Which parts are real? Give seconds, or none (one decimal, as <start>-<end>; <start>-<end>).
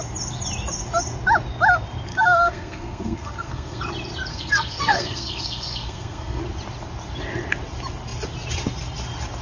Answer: 0.0-2.1; 3.8-4.3; 6.4-9.4